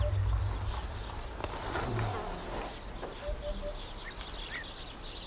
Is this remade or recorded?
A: recorded